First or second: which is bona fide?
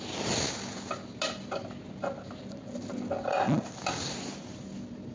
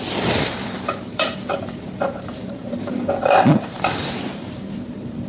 first